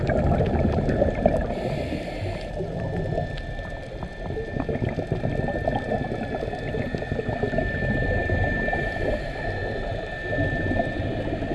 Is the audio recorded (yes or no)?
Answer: yes